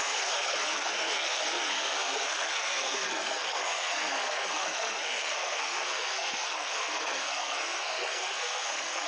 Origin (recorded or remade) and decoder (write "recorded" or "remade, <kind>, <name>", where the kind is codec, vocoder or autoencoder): remade, codec, SNAC